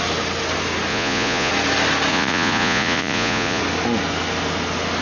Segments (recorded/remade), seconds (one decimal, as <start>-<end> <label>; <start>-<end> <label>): 0.0-0.9 recorded; 0.9-1.5 remade; 1.5-2.1 recorded; 2.1-3.6 remade; 3.6-5.0 recorded